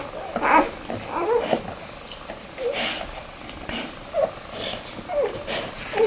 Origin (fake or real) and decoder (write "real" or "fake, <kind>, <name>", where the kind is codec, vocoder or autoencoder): real